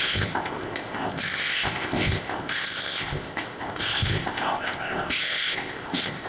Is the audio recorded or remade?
remade